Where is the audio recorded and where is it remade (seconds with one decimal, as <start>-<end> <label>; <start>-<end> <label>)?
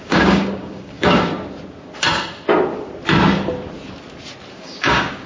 0.0-1.3 remade; 1.3-4.5 recorded; 4.5-5.3 remade